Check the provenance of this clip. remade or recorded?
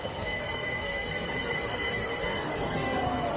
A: remade